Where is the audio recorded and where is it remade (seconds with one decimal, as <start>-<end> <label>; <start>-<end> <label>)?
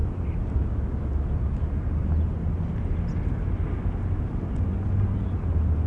0.0-5.9 recorded